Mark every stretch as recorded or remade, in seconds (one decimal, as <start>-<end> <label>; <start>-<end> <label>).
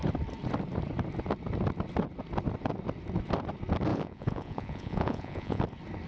0.0-3.9 recorded; 3.9-5.6 remade; 5.6-6.1 recorded